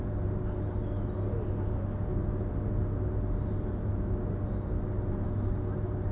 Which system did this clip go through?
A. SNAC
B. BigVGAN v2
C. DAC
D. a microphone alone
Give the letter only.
D